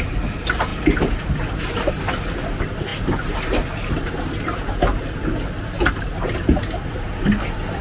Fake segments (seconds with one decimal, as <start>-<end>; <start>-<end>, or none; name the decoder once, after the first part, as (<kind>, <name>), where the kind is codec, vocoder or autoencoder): none